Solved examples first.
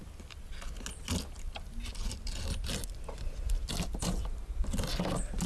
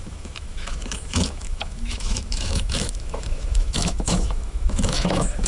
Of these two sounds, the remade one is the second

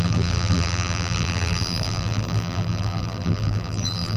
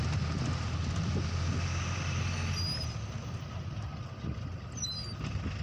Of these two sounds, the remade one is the first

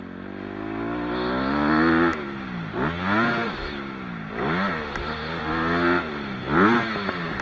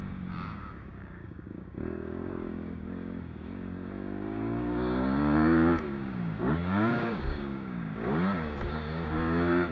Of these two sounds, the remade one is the second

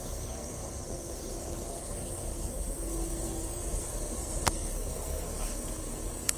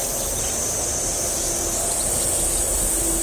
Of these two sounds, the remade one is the first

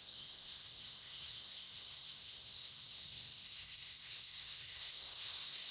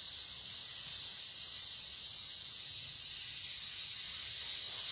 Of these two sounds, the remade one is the first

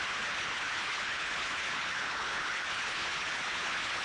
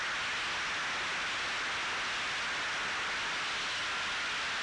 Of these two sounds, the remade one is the first